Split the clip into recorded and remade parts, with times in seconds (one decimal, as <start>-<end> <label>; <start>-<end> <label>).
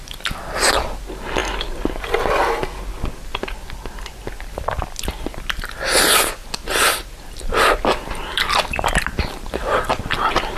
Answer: 0.0-10.6 recorded